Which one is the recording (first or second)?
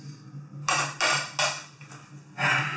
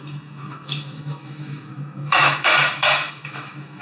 first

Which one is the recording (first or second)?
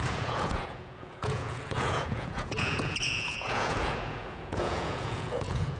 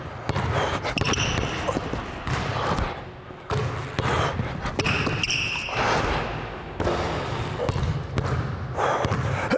second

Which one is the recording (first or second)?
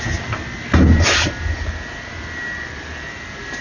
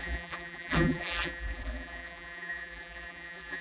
first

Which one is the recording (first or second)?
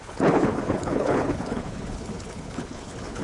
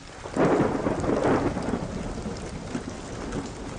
second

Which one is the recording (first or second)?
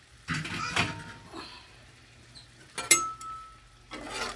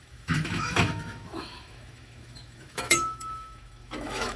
first